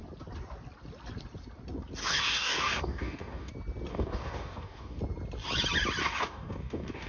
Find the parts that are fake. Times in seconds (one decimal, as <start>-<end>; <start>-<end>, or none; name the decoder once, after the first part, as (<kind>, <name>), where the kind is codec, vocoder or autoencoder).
2.0-3.5 (codec, DAC); 3.9-5.0; 6.0-7.1